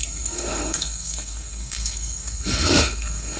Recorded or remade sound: remade